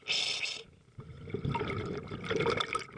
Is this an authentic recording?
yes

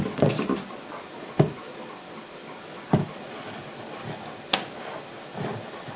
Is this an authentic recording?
yes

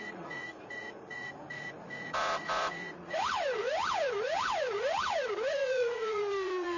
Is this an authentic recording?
no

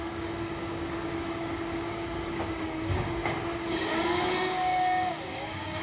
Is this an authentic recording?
no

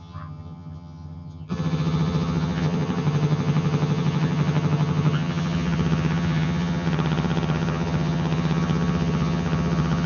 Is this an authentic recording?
no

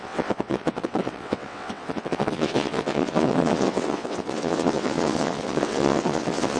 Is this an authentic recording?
no